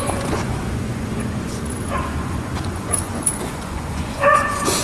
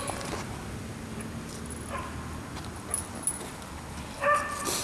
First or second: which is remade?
first